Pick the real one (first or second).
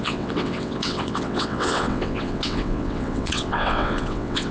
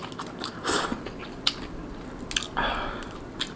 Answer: second